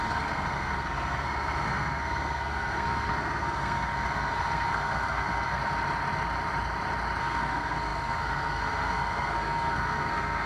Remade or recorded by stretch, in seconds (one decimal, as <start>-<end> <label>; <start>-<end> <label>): 0.0-5.6 remade; 5.6-7.2 recorded; 7.2-10.5 remade

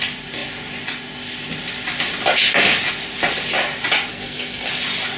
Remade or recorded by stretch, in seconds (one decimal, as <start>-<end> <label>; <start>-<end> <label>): 0.0-4.1 recorded; 4.1-4.7 remade; 4.7-5.2 recorded

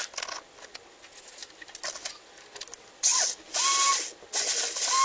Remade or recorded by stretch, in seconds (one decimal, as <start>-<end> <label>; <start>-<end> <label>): 0.0-5.0 recorded

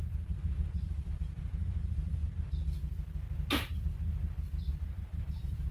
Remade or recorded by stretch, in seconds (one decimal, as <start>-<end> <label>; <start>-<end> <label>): 0.0-2.2 remade; 2.2-4.7 recorded; 4.7-5.7 remade

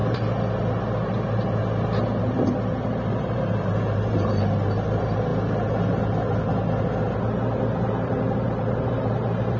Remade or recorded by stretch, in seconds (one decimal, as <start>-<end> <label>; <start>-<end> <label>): 0.0-2.2 recorded; 2.2-5.3 remade; 5.3-7.7 recorded; 7.7-9.6 remade

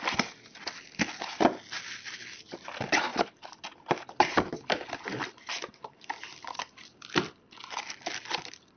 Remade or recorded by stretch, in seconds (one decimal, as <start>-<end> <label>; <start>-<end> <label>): 0.0-8.8 recorded

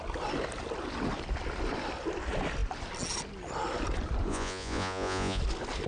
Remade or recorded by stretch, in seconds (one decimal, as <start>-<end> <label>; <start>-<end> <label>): 0.0-4.3 recorded; 4.3-5.4 remade; 5.4-5.9 recorded